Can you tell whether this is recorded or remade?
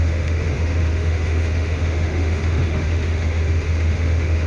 remade